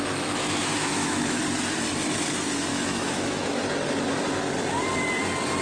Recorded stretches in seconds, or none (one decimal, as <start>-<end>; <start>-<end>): 0.0-0.7; 1.4-2.7; 3.6-5.6